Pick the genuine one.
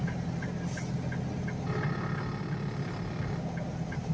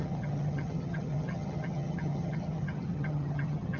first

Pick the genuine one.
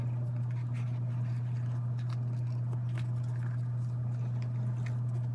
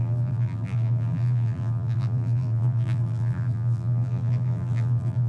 first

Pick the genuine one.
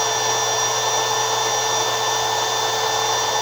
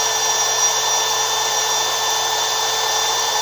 first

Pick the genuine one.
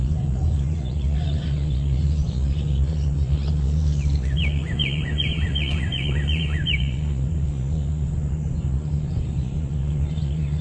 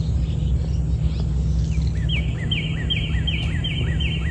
second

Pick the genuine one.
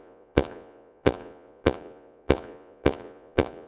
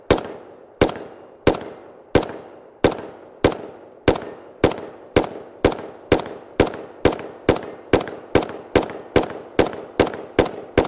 second